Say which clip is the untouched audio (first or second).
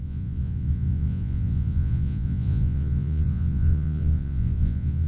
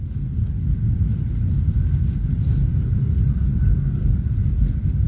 second